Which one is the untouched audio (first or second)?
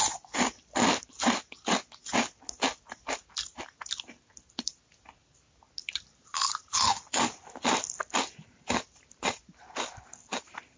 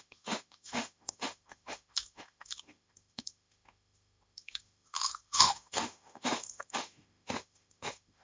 first